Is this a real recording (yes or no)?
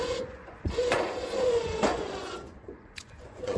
no